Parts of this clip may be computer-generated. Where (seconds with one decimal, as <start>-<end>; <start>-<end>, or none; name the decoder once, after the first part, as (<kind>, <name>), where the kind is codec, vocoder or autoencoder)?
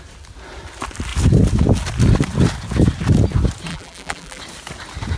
3.7-4.4 (vocoder, BigVGAN v2)